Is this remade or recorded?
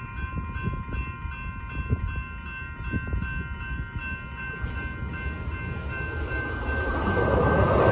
recorded